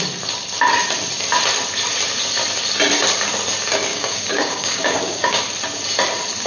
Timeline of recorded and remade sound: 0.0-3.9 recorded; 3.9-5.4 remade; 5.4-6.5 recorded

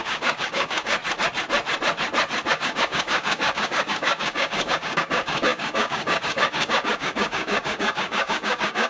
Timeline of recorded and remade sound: 0.0-1.0 remade; 1.0-2.5 recorded; 2.5-8.9 remade

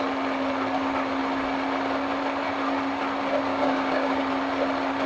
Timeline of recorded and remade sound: 0.0-3.5 recorded; 3.5-4.2 remade; 4.2-5.1 recorded

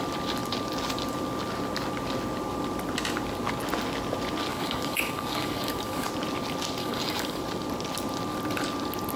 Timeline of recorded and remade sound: 0.0-4.5 recorded; 4.5-6.1 remade; 6.1-6.8 recorded; 6.8-7.4 remade; 7.4-9.2 recorded

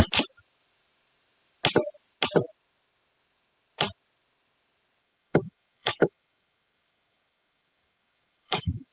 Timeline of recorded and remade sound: 0.0-5.0 recorded; 5.0-8.9 remade

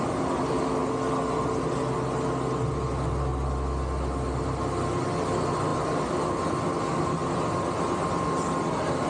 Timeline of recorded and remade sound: 0.0-9.1 recorded